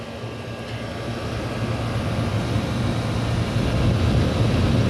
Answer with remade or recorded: recorded